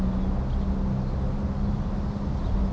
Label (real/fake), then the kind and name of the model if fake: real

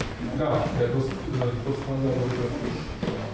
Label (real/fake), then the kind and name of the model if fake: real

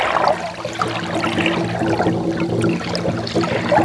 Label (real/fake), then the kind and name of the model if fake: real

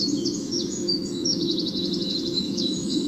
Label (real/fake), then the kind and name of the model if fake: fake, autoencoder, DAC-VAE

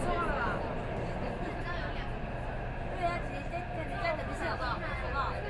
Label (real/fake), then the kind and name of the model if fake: real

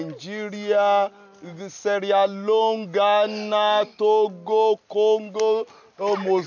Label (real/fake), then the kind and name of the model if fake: real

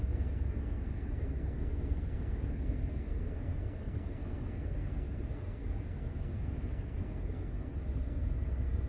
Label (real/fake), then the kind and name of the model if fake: fake, codec, SNAC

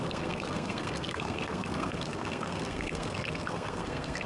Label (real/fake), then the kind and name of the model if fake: fake, codec, SNAC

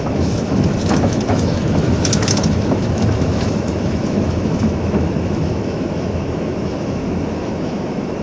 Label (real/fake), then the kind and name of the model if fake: fake, autoencoder, DAC-VAE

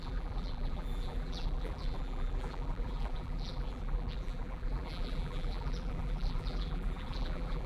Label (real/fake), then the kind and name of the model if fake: fake, vocoder, BigVGAN v2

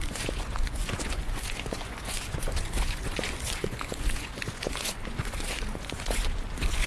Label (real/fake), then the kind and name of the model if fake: fake, vocoder, Vocos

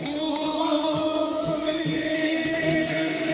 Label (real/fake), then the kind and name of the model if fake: fake, codec, SNAC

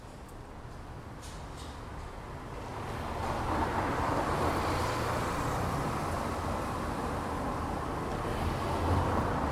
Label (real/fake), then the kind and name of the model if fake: real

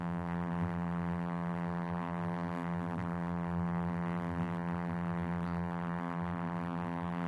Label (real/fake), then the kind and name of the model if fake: fake, vocoder, BigVGAN v2